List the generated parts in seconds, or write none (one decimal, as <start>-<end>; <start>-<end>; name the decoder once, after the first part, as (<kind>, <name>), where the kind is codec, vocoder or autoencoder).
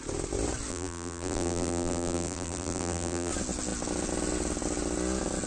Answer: 0.7-3.3 (vocoder, BigVGAN v2)